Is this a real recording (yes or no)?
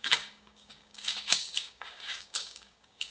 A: no